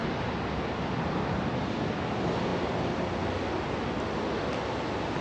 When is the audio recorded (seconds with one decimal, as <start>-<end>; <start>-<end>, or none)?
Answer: 0.0-5.2